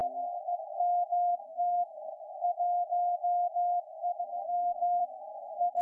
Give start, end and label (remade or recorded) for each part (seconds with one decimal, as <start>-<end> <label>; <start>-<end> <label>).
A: 0.0-1.3 recorded; 1.3-2.1 remade; 2.1-4.2 recorded; 4.2-5.8 remade